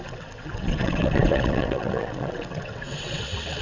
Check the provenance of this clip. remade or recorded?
remade